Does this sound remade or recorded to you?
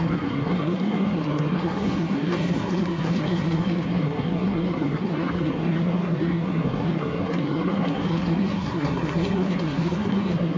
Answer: remade